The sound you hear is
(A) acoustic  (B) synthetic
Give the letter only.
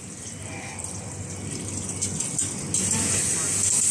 A